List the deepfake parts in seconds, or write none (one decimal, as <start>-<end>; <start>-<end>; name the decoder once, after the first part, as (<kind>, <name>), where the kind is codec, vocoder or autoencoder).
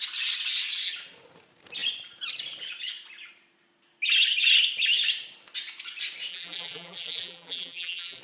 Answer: 6.3-8.2 (vocoder, BigVGAN v2)